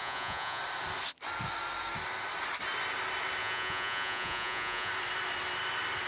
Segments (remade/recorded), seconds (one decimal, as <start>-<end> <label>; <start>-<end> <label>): 0.0-0.6 remade; 0.6-3.4 recorded; 3.4-4.9 remade; 4.9-6.1 recorded